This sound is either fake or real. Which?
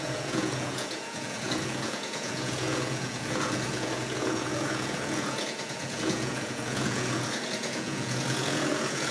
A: fake